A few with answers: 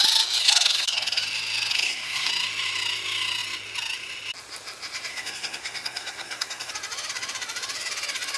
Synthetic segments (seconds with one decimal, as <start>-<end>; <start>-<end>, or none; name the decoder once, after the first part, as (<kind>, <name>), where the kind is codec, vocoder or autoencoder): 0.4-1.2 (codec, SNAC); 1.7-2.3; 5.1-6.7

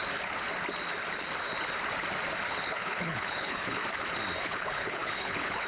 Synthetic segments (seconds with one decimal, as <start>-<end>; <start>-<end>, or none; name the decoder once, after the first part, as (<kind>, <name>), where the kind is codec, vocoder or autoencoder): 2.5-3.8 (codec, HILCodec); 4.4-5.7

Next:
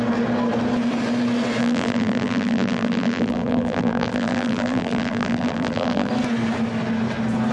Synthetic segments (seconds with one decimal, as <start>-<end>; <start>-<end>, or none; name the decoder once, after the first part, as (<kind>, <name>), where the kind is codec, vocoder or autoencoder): 1.6-6.1 (vocoder, BigVGAN v2)

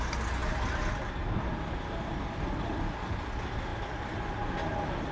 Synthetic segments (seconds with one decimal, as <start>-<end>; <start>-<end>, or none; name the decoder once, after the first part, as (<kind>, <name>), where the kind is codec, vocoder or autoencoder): none